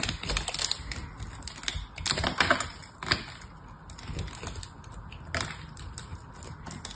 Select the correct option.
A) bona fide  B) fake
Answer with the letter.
A